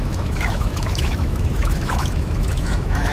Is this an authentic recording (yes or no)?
no